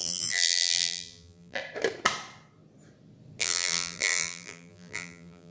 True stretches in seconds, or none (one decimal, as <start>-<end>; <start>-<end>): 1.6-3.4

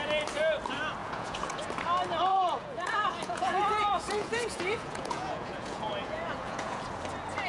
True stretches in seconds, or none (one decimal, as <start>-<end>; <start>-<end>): 0.0-1.0; 1.7-2.3; 6.8-7.5

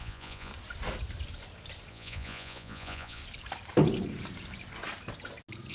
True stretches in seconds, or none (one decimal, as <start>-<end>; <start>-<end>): 0.5-1.9; 3.2-5.7

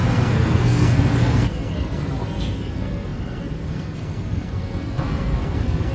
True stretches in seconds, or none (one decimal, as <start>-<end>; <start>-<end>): none

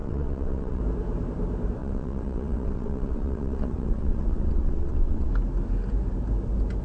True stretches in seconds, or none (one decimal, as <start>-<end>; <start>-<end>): 0.8-1.8; 5.3-6.8

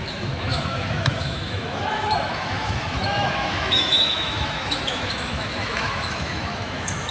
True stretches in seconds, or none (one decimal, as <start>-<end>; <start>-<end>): none

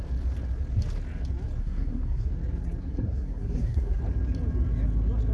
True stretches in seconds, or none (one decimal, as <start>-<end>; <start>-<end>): 0.0-1.6; 2.3-2.8; 4.0-5.3

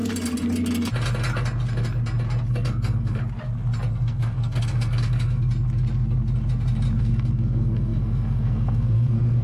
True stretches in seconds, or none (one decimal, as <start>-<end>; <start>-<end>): 0.0-2.5; 3.2-3.9; 5.4-7.0